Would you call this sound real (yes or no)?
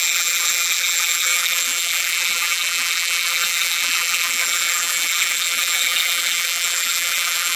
no